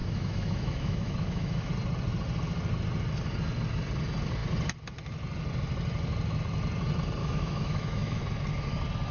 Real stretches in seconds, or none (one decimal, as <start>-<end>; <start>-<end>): 1.7-7.2; 8.2-9.1

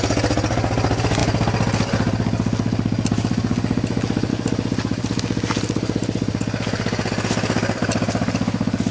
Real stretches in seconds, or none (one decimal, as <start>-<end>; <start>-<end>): 0.0-8.9